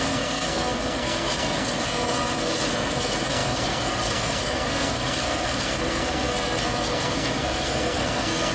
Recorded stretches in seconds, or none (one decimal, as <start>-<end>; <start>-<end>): none